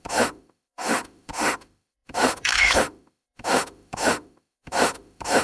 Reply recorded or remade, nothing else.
remade